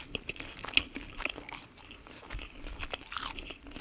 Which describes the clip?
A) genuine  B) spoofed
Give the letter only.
A